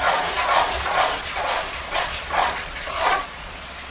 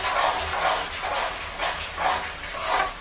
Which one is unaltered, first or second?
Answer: second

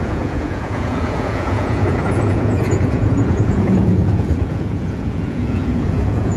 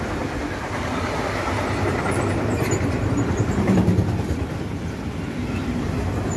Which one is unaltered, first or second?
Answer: second